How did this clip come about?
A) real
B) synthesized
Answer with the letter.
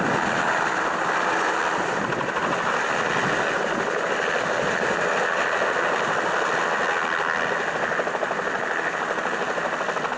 A